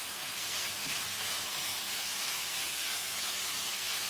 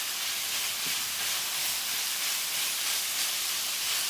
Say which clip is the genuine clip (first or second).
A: second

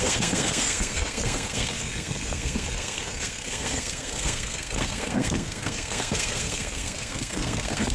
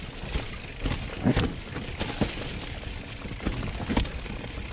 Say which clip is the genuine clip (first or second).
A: second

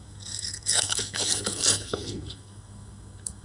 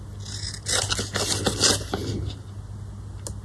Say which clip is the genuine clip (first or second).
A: second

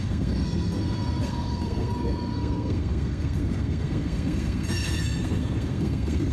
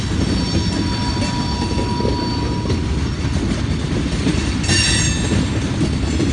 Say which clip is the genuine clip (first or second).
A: second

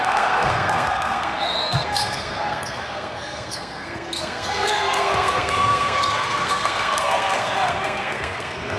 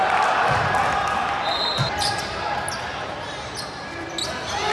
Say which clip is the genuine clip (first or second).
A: second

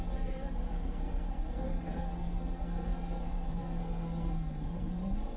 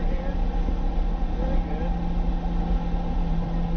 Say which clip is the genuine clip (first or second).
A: second